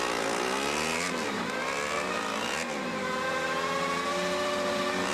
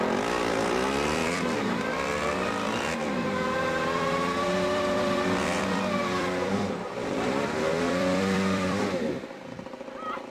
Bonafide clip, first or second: first